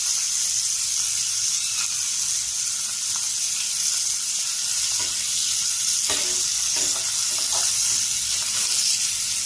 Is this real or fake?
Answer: real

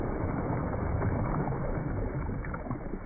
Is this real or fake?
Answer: fake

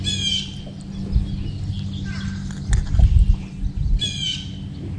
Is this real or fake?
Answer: real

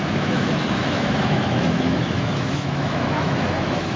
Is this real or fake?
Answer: fake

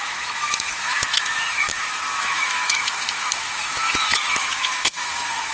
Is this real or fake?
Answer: fake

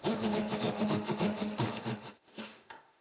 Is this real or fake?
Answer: fake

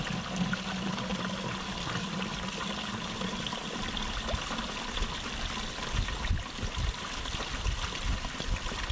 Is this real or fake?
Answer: real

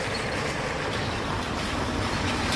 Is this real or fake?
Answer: real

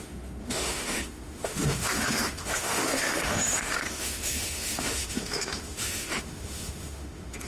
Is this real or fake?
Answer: fake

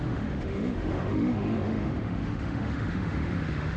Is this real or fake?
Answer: fake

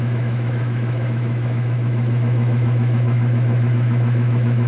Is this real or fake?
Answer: fake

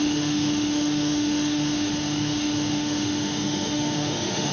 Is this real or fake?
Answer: fake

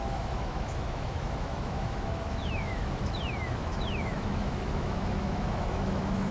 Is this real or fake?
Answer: fake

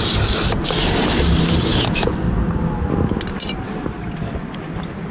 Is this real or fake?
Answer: real